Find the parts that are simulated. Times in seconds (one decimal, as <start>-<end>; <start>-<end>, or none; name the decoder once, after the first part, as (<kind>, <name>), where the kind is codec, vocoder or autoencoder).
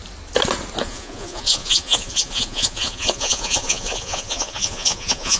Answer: 0.8-5.4 (vocoder, Vocos)